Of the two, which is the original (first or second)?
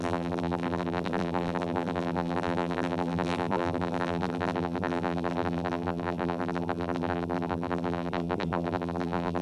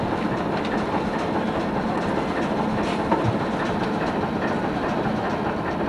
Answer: second